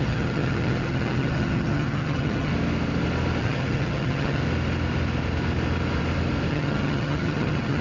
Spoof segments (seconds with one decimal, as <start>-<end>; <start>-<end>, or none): 0.0-2.5; 3.4-4.4; 6.5-7.8

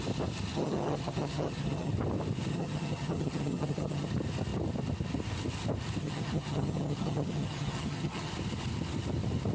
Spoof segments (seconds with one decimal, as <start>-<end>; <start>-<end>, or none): 0.5-1.9; 2.5-4.1; 6.0-8.3

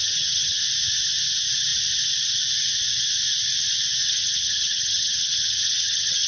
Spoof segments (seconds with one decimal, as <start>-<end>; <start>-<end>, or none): 0.0-0.6; 4.0-6.3

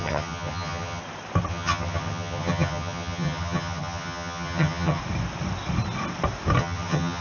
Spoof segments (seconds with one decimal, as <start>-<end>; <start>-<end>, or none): 0.0-1.0; 1.5-5.0; 6.6-7.2

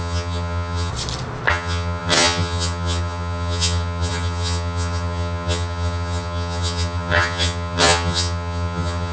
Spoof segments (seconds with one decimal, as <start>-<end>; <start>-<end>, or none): 0.0-0.9; 1.5-9.1

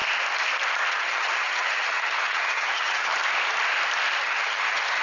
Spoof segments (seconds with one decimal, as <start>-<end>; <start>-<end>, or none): 0.9-3.1; 4.2-5.0

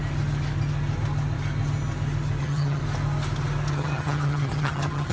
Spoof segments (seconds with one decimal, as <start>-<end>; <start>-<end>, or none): 2.4-2.8; 3.7-5.1

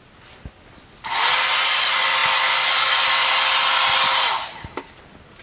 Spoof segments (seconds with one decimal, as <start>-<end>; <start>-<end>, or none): none